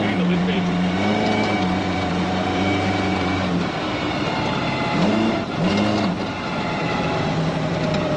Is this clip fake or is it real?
fake